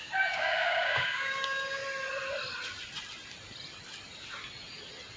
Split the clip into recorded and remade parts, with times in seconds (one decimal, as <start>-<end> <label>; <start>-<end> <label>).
0.0-1.8 remade; 1.8-5.2 recorded